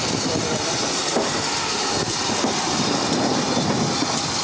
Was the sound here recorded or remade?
recorded